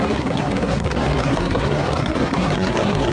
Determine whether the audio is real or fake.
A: fake